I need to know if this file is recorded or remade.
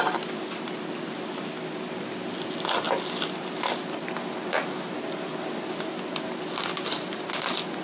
recorded